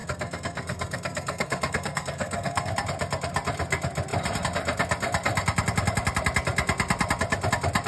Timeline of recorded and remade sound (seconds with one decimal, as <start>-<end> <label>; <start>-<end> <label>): 0.0-2.7 remade; 2.7-7.9 recorded